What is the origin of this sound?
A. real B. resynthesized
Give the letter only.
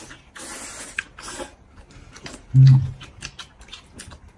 A